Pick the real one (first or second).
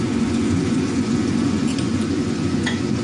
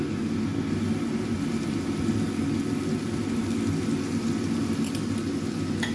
second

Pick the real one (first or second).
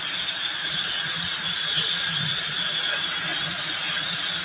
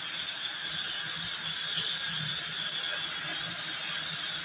second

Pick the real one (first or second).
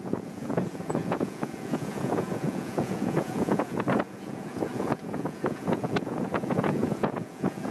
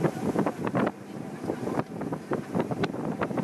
second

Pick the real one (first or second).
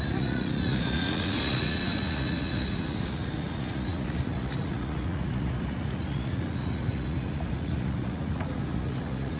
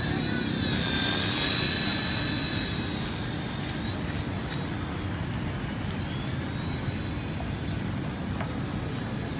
second